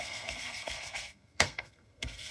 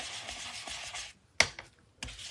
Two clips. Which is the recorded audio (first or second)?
second